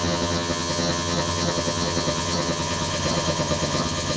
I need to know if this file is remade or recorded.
remade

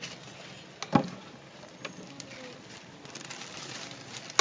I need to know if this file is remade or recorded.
recorded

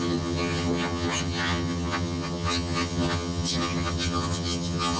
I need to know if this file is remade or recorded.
remade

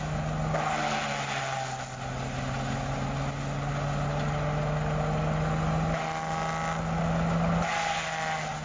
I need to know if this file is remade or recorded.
recorded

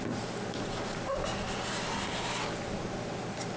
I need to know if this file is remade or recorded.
recorded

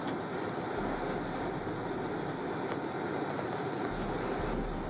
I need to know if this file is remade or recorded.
recorded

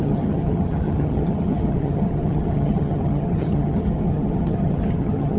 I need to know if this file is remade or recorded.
remade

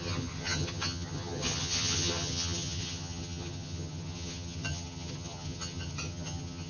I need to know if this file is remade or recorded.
remade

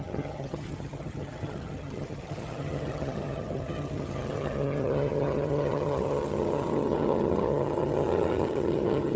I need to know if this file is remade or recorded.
remade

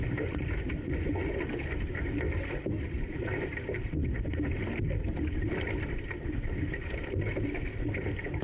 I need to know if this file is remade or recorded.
recorded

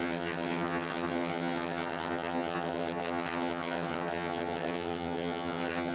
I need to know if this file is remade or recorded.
remade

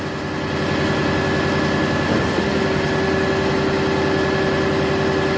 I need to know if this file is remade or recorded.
recorded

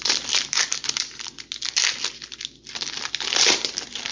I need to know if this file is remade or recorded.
recorded